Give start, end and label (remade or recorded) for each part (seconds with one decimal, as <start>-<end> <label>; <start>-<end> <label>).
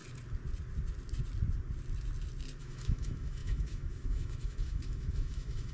0.0-2.6 recorded; 2.6-5.7 remade